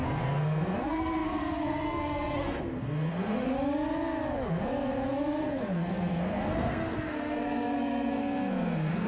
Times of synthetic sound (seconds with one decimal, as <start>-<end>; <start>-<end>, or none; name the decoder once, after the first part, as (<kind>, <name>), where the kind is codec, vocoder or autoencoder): 0.0-3.5 (codec, SNAC); 4.5-9.1